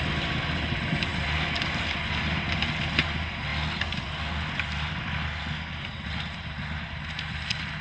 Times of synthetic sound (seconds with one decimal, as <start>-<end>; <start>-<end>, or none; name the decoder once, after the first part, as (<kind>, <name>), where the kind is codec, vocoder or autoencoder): none